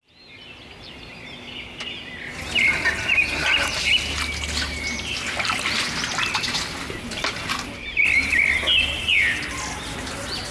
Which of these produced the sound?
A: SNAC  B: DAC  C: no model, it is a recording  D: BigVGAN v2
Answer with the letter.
C